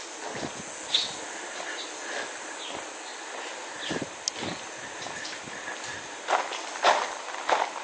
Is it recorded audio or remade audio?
recorded